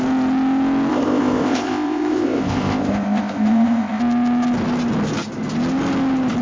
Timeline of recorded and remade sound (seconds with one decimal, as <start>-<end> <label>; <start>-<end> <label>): 0.0-0.9 recorded; 0.9-4.0 remade; 4.0-6.4 recorded